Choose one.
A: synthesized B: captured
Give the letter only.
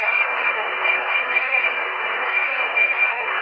A